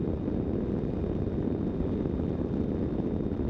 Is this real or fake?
real